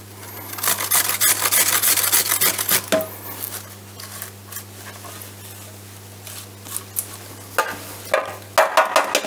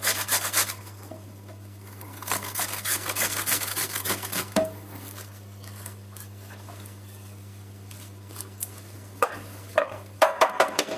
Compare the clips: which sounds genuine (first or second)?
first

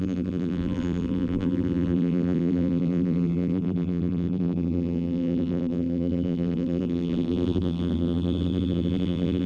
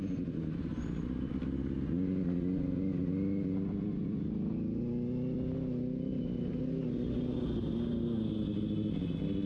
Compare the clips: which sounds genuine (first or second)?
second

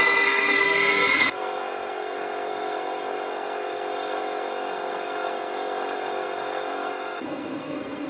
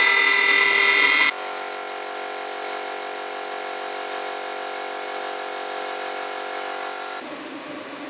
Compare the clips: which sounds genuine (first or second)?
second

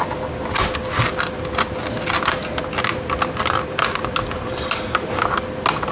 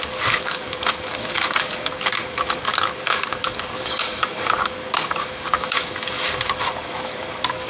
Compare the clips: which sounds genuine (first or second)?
first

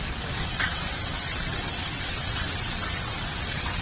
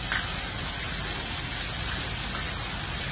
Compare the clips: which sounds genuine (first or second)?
second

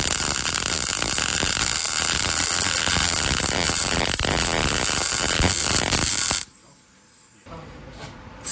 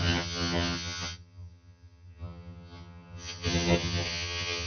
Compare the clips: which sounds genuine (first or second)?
first